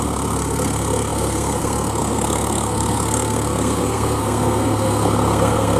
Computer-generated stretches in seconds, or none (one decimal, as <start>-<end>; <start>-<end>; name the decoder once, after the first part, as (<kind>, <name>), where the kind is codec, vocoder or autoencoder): 0.0-5.8 (codec, SNAC)